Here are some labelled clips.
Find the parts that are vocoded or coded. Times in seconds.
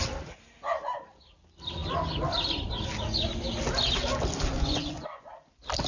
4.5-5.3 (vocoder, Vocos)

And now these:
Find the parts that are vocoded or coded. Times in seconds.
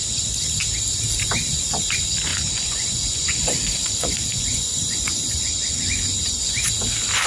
2.3-6.7 (vocoder, Vocos)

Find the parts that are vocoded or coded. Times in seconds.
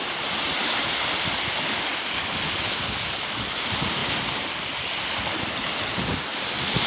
none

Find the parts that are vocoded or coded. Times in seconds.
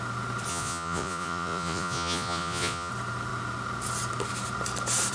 0.5-2.9 (vocoder, Vocos)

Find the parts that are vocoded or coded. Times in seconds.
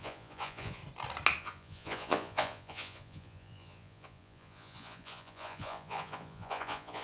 0.0-0.8 (vocoder, Vocos); 1.4-7.0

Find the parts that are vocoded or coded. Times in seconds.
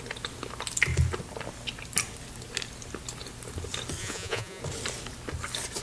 4.0-4.6 (vocoder, Vocos)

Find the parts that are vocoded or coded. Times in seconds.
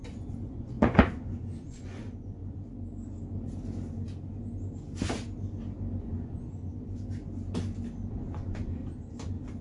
0.0-2.4 (vocoder, Vocos); 6.0-6.7; 8.1-8.8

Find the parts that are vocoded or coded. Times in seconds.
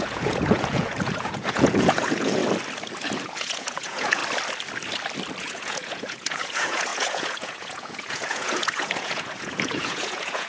0.0-2.4 (vocoder, Vocos); 3.2-4.2; 5.4-10.5